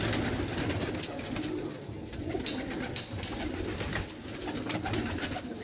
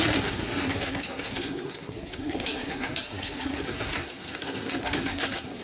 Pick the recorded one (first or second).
first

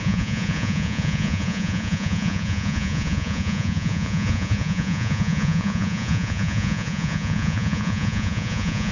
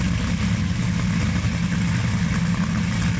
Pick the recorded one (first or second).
second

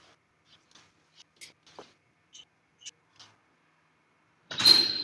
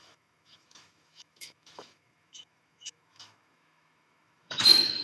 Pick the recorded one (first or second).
first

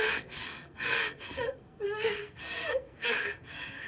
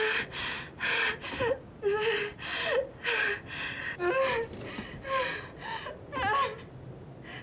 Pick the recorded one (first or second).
second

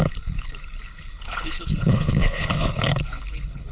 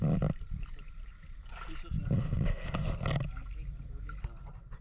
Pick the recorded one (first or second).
second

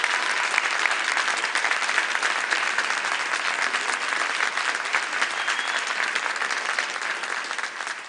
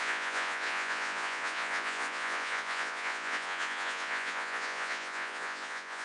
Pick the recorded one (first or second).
first